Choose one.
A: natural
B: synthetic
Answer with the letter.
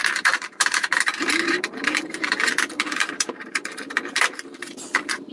B